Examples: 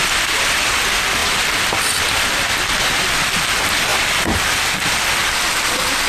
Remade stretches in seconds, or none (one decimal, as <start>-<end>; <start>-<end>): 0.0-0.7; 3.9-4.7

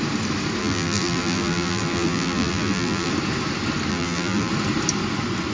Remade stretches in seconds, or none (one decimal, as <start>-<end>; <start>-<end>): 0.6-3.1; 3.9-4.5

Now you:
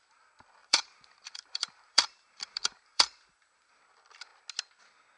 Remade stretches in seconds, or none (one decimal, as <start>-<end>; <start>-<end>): 0.6-3.7